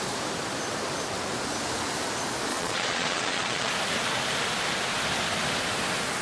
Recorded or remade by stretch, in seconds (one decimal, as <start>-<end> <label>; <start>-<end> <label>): 0.0-2.5 recorded; 2.5-3.7 remade; 3.7-6.2 recorded